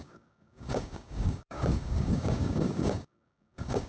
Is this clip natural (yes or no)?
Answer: no